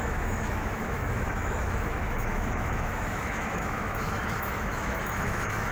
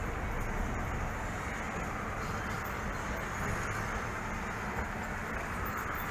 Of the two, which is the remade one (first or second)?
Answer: first